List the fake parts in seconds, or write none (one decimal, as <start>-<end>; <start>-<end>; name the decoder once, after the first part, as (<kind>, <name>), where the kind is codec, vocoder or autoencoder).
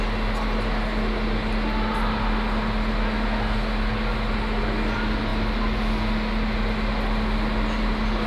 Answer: none